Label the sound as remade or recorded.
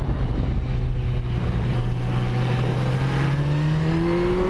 recorded